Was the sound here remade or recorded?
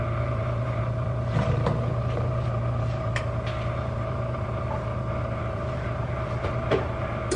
remade